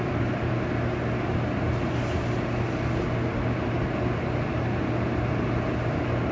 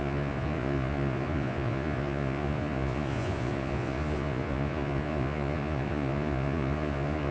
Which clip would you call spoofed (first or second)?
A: second